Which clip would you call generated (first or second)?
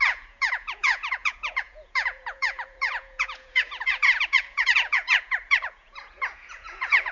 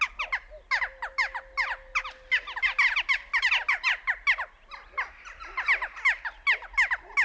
first